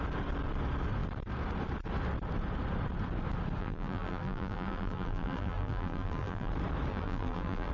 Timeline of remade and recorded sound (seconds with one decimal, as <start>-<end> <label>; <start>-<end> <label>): 0.0-3.6 recorded; 3.6-6.5 remade; 6.5-6.9 recorded; 6.9-7.7 remade